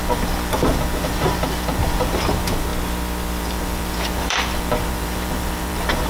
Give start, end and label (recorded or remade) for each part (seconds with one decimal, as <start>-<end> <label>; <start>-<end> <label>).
0.0-2.7 remade; 2.7-3.4 recorded; 3.4-6.1 remade